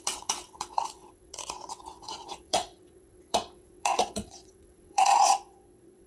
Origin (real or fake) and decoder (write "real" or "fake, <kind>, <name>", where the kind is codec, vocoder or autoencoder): fake, vocoder, WaveNeXt